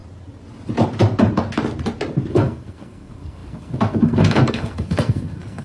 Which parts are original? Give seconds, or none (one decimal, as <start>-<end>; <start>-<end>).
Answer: 0.0-2.3